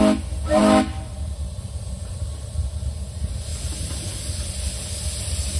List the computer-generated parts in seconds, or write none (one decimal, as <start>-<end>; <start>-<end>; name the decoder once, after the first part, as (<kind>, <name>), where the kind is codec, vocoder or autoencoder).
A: none